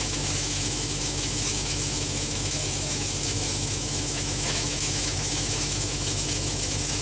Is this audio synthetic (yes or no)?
yes